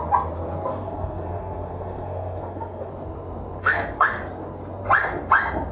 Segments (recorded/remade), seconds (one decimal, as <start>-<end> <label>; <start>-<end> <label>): 0.0-0.7 recorded; 0.7-2.9 remade; 2.9-3.6 recorded; 3.6-4.2 remade; 4.2-5.7 recorded

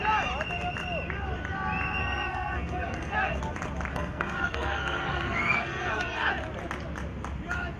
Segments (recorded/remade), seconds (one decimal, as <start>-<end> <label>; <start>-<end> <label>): 0.0-2.0 recorded; 2.0-3.4 remade; 3.4-3.9 recorded; 3.9-6.3 remade; 6.3-7.8 recorded

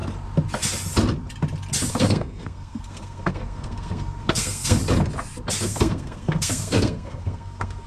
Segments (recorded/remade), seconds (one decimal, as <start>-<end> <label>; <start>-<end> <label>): 0.0-1.9 recorded; 1.9-4.8 remade; 4.8-5.6 recorded; 5.6-7.9 remade

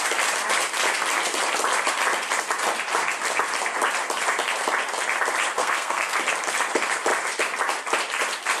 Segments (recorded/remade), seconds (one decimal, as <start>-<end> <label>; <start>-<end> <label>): 0.0-5.6 recorded; 5.6-6.2 remade; 6.2-8.6 recorded

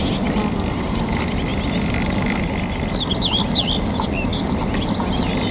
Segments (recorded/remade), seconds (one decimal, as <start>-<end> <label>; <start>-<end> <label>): 0.0-5.5 recorded

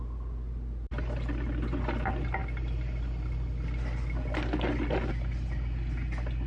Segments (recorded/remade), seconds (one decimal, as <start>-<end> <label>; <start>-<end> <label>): 0.0-6.5 recorded

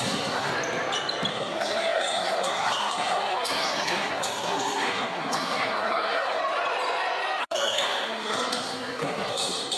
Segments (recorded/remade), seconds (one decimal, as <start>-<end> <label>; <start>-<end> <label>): 0.0-0.5 remade; 0.5-1.3 recorded; 1.3-6.4 remade; 6.4-7.4 recorded; 7.4-9.8 remade

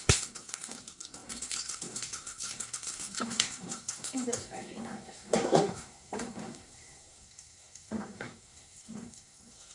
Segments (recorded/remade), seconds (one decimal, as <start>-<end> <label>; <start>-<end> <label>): 0.0-9.7 remade